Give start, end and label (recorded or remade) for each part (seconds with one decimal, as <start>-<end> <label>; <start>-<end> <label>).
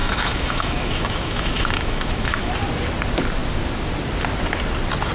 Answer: 0.0-2.5 remade; 2.5-5.1 recorded